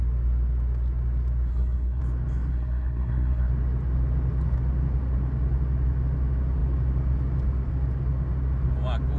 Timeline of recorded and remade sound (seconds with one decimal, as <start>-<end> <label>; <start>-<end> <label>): 0.0-1.5 recorded; 1.5-2.0 remade; 2.0-2.5 recorded; 2.5-3.5 remade; 3.5-9.2 recorded

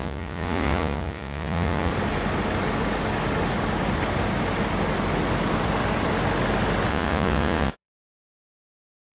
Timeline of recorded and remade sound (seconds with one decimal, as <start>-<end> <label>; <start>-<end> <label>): 0.0-1.9 remade; 1.9-6.9 recorded; 6.9-9.1 remade

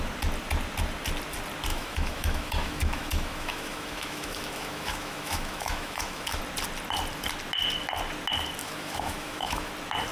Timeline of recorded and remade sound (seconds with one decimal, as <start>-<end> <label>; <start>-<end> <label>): 0.0-1.7 recorded; 1.7-6.4 remade; 6.4-8.6 recorded; 8.6-9.7 remade; 9.7-10.1 recorded

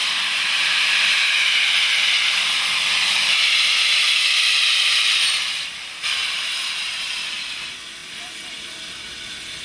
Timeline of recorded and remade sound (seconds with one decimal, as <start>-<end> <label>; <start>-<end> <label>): 0.0-1.9 remade; 1.9-6.2 recorded; 6.2-7.0 remade; 7.0-9.6 recorded

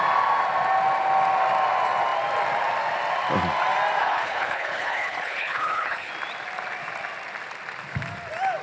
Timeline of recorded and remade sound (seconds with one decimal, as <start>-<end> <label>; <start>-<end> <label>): 0.0-4.0 recorded; 4.0-6.1 remade; 6.1-8.6 recorded